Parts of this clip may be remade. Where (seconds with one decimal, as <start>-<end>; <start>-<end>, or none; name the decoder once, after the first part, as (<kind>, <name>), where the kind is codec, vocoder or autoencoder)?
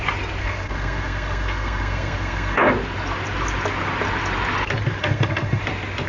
0.4-2.7 (codec, SNAC); 5.0-5.6